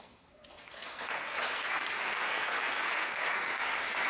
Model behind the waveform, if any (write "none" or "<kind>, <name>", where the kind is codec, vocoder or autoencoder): codec, SNAC